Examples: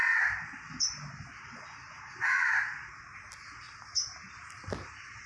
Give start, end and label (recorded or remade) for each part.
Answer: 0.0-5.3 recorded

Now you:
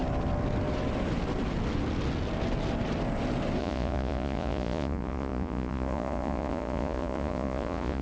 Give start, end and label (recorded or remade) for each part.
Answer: 0.0-3.6 recorded; 3.6-8.0 remade

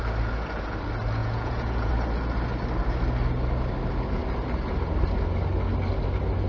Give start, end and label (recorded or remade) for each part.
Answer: 0.0-1.2 recorded; 1.2-1.9 remade; 1.9-6.5 recorded

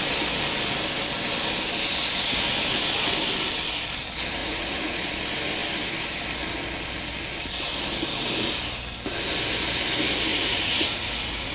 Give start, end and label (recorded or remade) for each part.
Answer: 0.0-4.4 recorded; 4.4-5.1 remade; 5.1-10.3 recorded; 10.3-11.5 remade